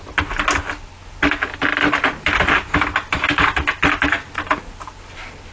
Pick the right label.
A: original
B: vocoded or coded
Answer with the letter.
A